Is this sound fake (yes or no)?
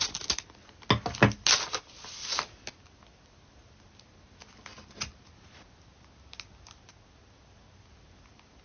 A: no